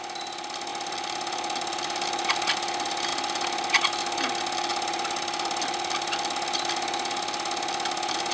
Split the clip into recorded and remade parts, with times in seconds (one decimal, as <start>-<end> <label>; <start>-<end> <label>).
0.0-0.7 recorded; 0.7-2.5 remade; 2.5-4.7 recorded; 4.7-5.8 remade; 5.8-8.3 recorded